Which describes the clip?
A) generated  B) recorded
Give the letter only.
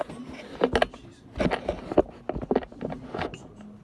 B